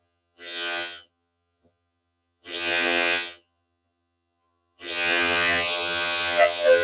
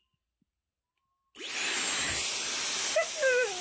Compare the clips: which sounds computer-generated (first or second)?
first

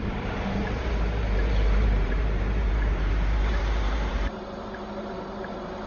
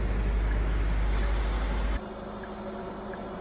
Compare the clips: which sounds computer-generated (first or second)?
first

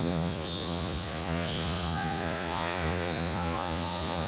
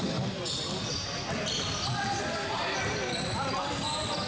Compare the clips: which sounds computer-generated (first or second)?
first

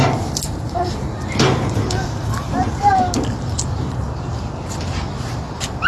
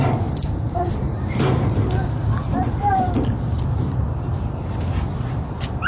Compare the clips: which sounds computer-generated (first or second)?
second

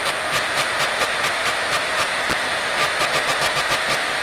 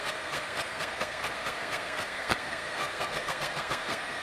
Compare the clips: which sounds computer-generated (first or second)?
second